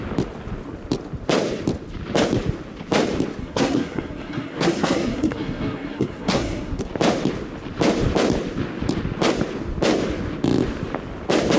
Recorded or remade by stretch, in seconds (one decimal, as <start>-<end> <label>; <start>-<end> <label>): 0.0-3.4 recorded; 3.4-6.8 remade; 6.8-11.6 recorded